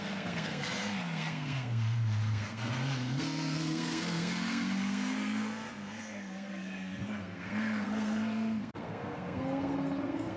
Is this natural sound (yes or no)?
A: no